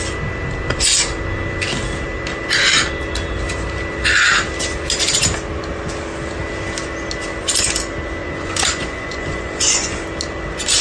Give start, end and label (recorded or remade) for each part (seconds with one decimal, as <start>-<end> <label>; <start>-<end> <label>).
0.0-8.2 recorded; 8.2-10.0 remade; 10.0-10.8 recorded

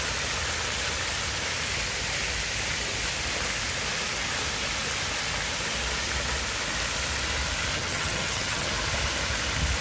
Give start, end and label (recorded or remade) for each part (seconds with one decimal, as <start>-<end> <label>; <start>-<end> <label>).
0.0-7.7 recorded; 7.7-8.7 remade; 8.7-9.8 recorded

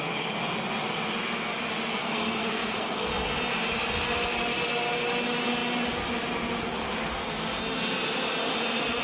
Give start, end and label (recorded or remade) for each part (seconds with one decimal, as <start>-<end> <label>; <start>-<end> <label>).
0.0-2.0 recorded; 2.0-3.1 remade; 3.1-9.0 recorded

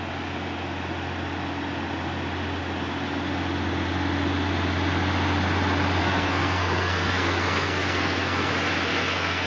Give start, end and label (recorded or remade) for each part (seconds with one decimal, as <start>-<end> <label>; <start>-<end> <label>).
0.0-6.0 recorded; 6.0-8.5 remade; 8.5-8.9 recorded; 8.9-9.5 remade

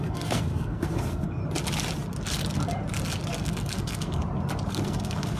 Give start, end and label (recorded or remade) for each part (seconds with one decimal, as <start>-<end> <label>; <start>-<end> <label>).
0.0-1.4 remade; 1.4-3.4 recorded; 3.4-4.2 remade; 4.2-4.7 recorded; 4.7-5.4 remade

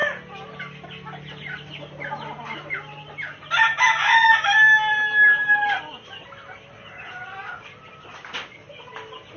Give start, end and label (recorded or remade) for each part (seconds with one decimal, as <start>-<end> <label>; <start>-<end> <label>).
0.0-9.4 recorded